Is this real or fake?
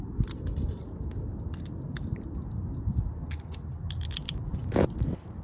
real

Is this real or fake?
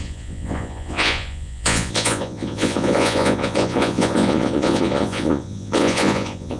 fake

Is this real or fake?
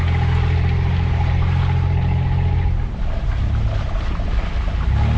real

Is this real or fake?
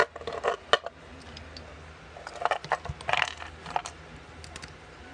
real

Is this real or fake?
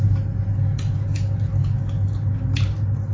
real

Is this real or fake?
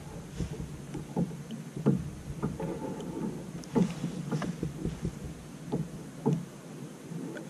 real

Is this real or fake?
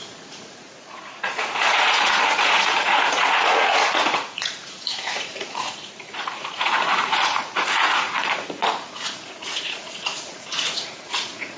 fake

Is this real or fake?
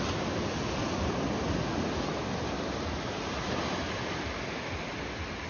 real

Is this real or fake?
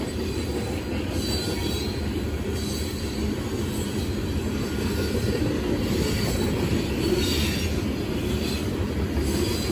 real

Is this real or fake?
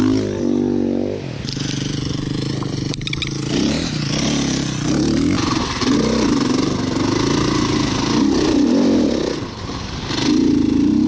real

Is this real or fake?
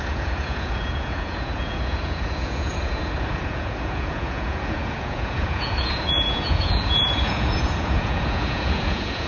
fake